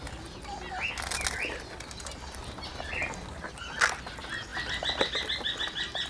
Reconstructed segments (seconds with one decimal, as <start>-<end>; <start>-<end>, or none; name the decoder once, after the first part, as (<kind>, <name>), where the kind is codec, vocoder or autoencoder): none